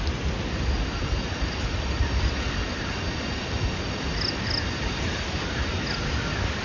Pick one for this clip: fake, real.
real